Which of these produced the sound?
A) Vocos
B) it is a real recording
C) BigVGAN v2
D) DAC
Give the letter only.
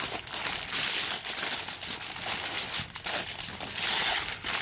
B